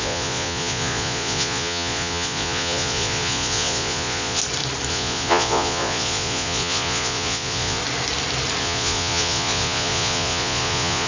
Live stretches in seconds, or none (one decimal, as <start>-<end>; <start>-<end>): 4.4-4.9; 7.8-8.6